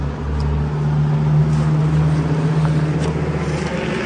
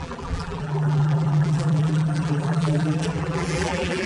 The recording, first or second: first